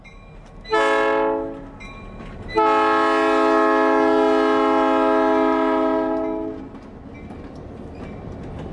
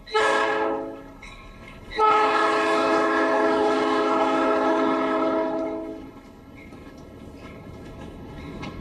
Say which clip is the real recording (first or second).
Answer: first